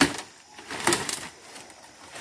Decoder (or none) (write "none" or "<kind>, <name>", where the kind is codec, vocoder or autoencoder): none